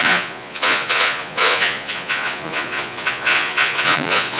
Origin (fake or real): fake